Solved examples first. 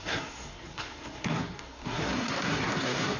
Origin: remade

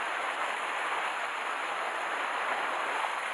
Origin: recorded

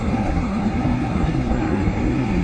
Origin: remade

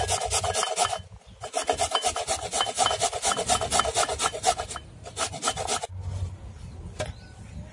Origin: recorded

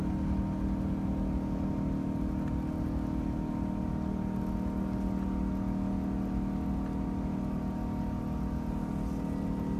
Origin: recorded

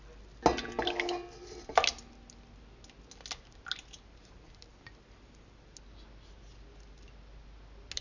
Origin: recorded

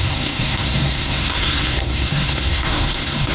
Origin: remade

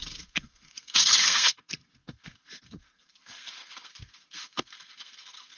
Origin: remade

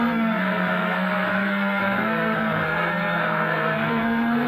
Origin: remade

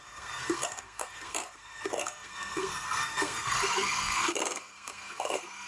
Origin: remade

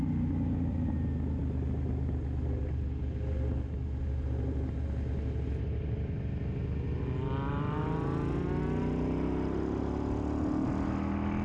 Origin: recorded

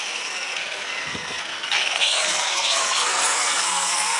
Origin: remade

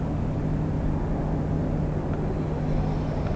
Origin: recorded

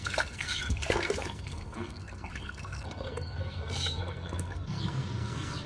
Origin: remade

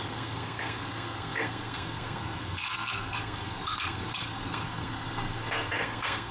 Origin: remade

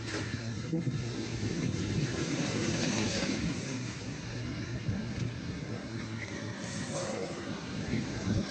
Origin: remade